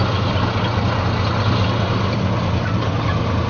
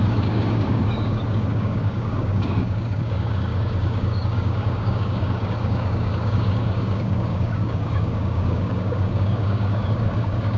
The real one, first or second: first